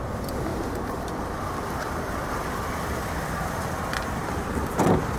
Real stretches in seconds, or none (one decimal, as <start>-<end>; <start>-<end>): 0.0-0.5; 3.6-4.2; 4.8-5.2